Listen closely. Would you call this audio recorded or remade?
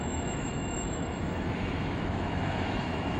remade